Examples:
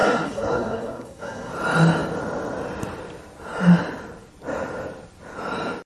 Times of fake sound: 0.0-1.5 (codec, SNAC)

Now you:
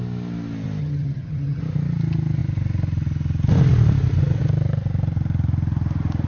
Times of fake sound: 0.8-1.6 (vocoder, HiFi-GAN)

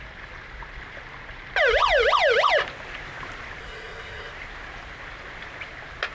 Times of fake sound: 3.6-4.3 (codec, SNAC)

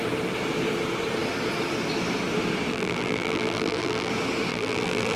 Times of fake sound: 2.7-4.1 (vocoder, BigVGAN v2); 4.5-5.2